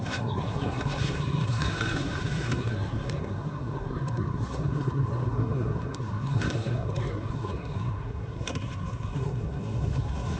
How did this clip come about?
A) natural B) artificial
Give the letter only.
B